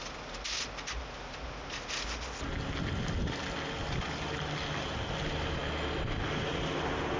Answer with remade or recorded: recorded